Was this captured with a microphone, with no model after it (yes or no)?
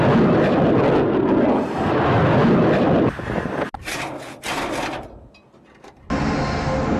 yes